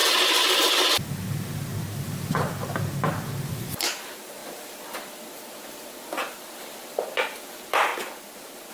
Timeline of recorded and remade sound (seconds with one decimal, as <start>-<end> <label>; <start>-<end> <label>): 0.0-1.7 remade; 1.7-3.5 recorded; 3.5-4.4 remade; 4.4-7.4 recorded; 7.4-7.9 remade; 7.9-8.7 recorded